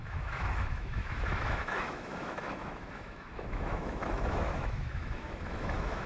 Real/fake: fake